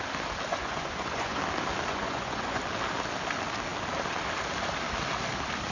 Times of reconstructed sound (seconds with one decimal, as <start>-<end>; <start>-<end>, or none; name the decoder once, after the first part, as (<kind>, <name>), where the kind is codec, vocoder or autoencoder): 0.5-1.4 (vocoder, Vocos); 1.9-2.6